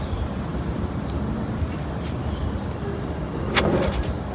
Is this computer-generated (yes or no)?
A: no